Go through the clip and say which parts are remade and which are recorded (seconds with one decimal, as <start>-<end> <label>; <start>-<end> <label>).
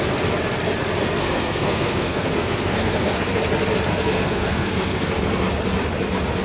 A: 0.0-1.1 recorded; 1.1-3.4 remade; 3.4-3.9 recorded; 3.9-5.1 remade; 5.1-6.4 recorded